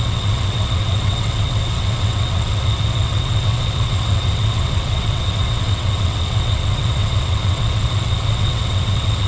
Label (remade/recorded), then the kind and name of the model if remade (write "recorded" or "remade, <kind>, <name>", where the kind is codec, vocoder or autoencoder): remade, vocoder, WaveNeXt